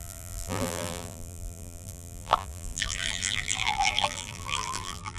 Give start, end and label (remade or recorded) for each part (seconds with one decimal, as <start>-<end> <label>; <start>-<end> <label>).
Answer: 0.0-5.2 remade